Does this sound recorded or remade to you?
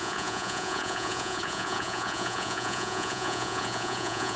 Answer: remade